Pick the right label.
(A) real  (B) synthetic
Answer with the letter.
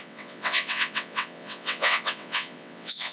B